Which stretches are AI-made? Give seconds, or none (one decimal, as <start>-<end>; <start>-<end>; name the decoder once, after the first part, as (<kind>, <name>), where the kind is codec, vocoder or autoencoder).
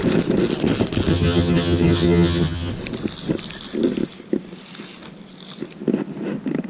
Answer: 1.1-2.7 (vocoder, HiFi-GAN)